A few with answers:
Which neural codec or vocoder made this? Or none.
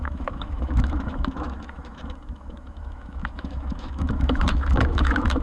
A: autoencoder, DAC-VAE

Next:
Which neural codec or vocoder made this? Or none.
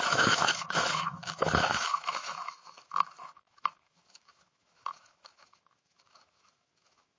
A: autoencoder, DAC-VAE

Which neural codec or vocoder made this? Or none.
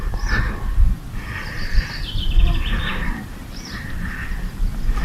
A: none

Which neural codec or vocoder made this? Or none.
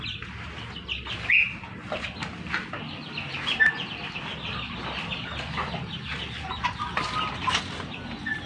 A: none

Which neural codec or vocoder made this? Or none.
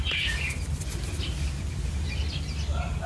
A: none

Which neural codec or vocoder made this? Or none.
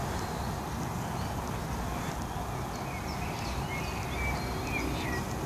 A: none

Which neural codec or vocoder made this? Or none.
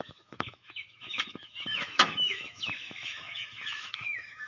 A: autoencoder, DAC-VAE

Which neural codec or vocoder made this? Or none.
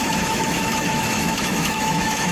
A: autoencoder, DAC-VAE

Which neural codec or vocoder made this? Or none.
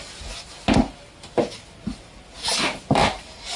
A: none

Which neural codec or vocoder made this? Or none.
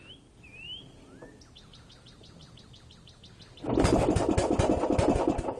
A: none